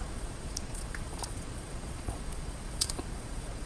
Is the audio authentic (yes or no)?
no